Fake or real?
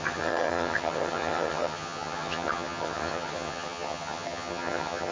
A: fake